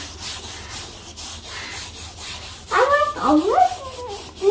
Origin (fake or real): real